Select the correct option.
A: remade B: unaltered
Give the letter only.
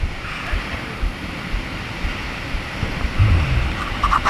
B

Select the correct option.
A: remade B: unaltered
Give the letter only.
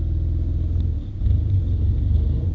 B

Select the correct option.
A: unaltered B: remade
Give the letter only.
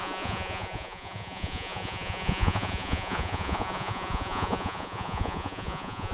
B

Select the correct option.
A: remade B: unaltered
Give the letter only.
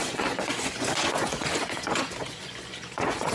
A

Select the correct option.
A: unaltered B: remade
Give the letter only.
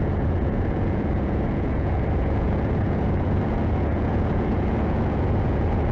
B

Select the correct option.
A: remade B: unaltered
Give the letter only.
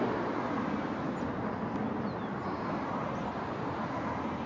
B